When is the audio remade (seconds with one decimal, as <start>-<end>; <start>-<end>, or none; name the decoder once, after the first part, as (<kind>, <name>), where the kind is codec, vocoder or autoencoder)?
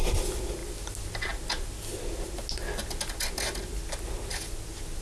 none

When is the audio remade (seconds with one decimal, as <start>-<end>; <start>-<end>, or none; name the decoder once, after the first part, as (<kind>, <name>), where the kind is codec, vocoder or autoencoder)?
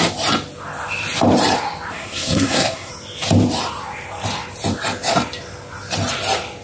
1.9-2.9 (codec, SNAC)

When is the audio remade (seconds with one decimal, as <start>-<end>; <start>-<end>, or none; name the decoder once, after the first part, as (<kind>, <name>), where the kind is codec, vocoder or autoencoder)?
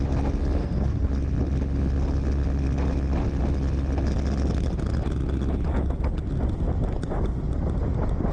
0.6-1.1 (codec, SNAC)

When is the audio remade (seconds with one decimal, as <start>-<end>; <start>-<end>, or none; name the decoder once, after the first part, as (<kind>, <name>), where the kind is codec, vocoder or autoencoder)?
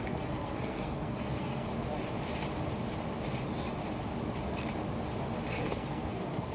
0.0-1.7 (codec, SNAC); 5.6-6.5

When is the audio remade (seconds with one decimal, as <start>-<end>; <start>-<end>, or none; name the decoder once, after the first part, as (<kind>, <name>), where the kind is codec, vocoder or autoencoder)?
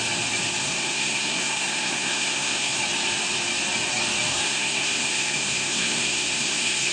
0.6-2.8 (codec, SNAC); 4.3-6.9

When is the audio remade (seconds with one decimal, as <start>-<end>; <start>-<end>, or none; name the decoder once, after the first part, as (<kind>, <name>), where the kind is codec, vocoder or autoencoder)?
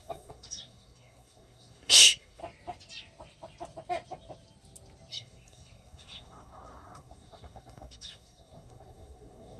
0.0-2.4 (codec, SNAC); 5.1-9.6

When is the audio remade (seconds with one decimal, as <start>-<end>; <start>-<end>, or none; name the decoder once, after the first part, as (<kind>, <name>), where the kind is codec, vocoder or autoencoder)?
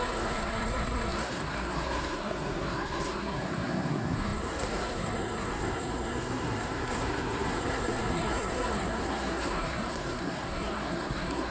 0.0-11.5 (codec, SNAC)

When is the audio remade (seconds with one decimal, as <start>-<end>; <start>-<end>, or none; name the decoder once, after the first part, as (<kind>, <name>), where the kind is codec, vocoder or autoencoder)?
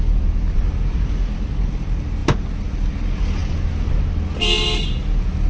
none